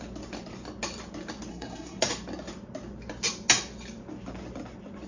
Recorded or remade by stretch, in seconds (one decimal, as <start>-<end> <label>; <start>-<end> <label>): 0.0-1.5 recorded; 1.5-2.0 remade; 2.0-5.1 recorded